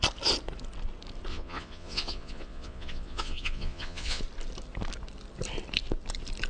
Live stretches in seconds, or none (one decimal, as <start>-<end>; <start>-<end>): 0.0-1.3; 4.2-6.5